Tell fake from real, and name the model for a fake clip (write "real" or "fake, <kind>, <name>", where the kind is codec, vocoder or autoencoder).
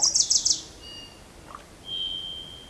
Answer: real